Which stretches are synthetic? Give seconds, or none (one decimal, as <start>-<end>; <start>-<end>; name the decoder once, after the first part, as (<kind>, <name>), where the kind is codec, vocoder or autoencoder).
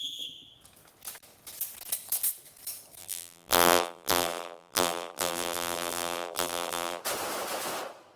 3.0-7.0 (vocoder, BigVGAN v2)